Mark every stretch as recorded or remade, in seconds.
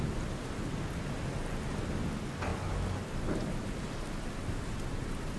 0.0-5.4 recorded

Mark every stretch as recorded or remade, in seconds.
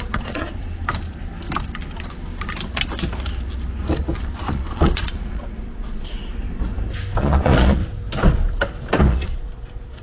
0.0-0.6 remade; 0.6-4.2 recorded; 4.2-6.5 remade; 6.5-7.2 recorded; 7.2-7.8 remade; 7.8-9.0 recorded; 9.0-10.0 remade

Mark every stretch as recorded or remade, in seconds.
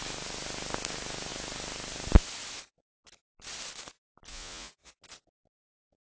0.0-4.3 recorded; 4.3-4.9 remade; 4.9-6.0 recorded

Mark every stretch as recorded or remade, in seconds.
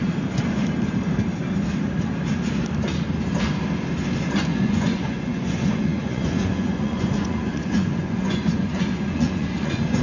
0.0-4.4 recorded; 4.4-10.0 remade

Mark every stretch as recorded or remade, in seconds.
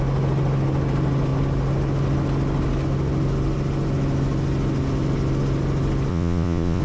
0.0-6.1 recorded; 6.1-6.8 remade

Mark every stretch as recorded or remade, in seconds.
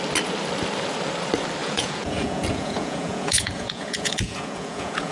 0.0-1.6 recorded; 1.6-5.1 remade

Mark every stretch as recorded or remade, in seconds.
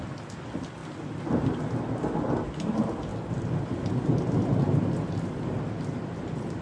0.0-6.6 recorded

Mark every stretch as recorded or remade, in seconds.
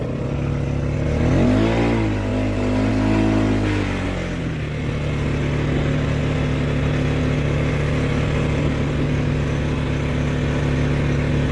0.0-11.5 recorded